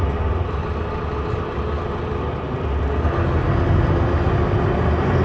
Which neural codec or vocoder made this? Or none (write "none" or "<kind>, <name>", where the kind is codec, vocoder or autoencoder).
none